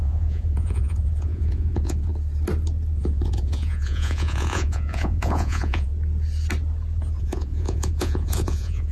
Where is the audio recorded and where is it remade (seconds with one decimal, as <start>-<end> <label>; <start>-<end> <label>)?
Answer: 0.0-2.1 remade; 2.1-3.0 recorded; 3.0-5.9 remade; 5.9-7.2 recorded; 7.2-8.9 remade

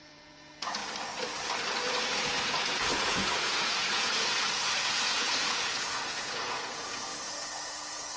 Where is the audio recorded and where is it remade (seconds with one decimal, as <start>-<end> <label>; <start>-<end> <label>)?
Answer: 0.0-0.8 remade; 0.8-1.9 recorded; 1.9-8.2 remade

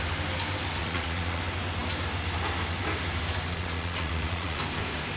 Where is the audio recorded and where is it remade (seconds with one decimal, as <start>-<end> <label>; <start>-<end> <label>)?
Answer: 0.0-0.8 recorded; 0.8-1.4 remade; 1.4-3.5 recorded; 3.5-4.6 remade; 4.6-5.2 recorded

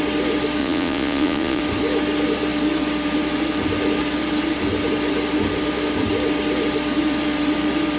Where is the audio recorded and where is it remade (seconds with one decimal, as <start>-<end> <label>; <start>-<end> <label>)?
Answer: 0.0-0.6 recorded; 0.6-1.6 remade; 1.6-8.0 recorded

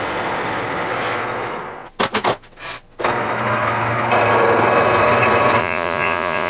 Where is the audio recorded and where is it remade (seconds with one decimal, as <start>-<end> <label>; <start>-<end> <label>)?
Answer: 0.0-5.6 recorded; 5.6-6.5 remade

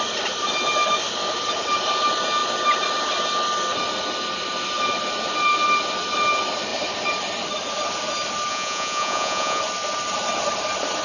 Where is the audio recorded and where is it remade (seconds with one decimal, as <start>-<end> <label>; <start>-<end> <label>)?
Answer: 0.0-8.5 recorded; 8.5-9.6 remade; 9.6-11.0 recorded

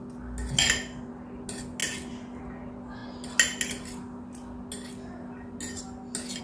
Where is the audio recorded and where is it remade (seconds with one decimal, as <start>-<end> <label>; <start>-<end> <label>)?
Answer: 0.0-6.4 recorded